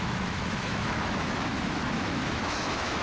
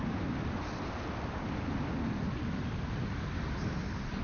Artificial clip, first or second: first